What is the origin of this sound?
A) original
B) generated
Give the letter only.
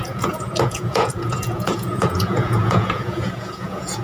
B